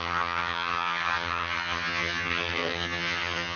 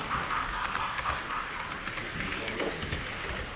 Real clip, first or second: second